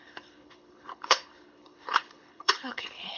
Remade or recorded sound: remade